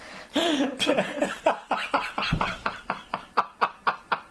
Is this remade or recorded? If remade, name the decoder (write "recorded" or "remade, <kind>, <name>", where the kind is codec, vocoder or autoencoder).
remade, vocoder, BigVGAN v2